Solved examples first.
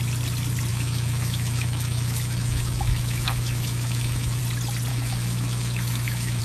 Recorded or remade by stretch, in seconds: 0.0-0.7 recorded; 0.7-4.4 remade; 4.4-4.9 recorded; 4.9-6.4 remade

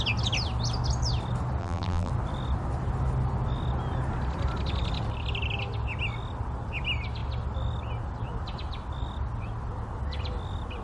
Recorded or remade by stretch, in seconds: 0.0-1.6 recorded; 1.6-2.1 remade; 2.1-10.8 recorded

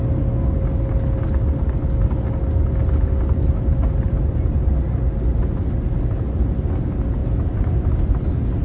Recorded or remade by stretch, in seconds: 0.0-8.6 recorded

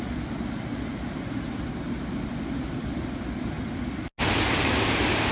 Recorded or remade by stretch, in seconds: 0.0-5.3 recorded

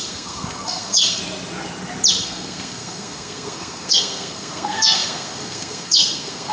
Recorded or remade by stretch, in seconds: 0.0-1.2 remade; 1.2-2.1 recorded; 2.1-6.5 remade

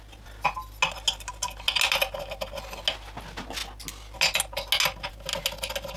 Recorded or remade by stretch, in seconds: 0.0-6.0 recorded

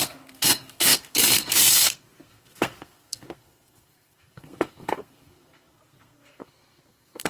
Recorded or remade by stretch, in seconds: 0.0-7.3 remade